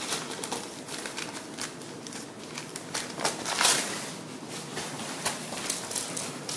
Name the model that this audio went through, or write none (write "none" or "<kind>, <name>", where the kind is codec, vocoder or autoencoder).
vocoder, BigVGAN v2